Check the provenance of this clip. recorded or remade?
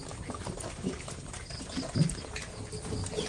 recorded